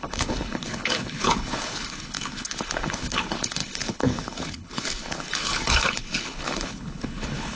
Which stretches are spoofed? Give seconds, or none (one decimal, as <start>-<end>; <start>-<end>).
0.0-7.6